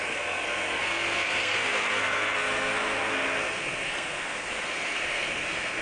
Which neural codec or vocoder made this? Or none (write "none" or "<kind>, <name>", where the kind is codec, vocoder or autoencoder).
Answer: codec, SNAC